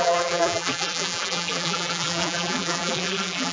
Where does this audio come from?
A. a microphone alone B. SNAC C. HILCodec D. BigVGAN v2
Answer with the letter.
D